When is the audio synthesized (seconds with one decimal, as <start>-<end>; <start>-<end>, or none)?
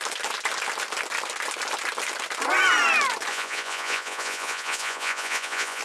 3.3-5.8